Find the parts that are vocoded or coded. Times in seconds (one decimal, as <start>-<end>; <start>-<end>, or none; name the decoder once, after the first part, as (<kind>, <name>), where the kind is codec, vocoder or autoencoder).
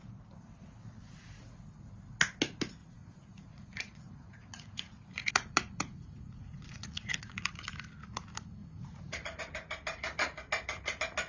2.8-7.7 (vocoder, Vocos); 8.6-9.4